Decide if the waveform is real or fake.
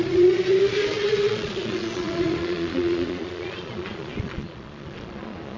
fake